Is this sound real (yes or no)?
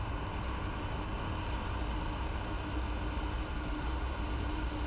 yes